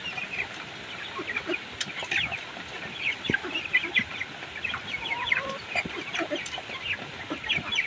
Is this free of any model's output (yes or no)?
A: yes